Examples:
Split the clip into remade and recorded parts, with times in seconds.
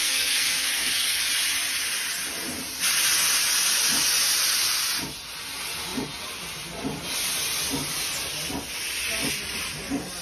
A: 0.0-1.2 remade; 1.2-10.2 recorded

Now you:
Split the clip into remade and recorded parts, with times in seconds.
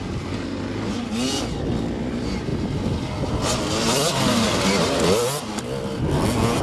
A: 0.0-6.6 recorded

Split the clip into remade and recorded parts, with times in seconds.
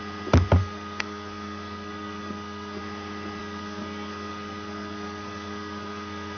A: 0.0-0.6 recorded; 0.6-2.8 remade; 2.8-3.4 recorded; 3.4-6.4 remade